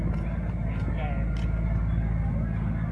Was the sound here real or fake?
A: real